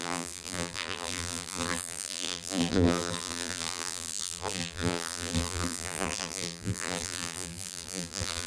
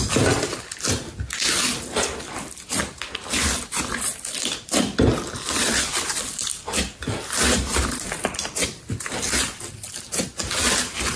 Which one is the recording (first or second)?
second